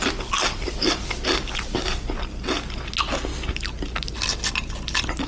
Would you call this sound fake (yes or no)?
no